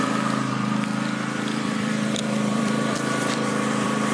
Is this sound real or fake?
fake